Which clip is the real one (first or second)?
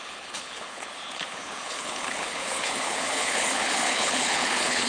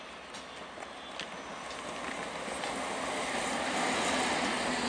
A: second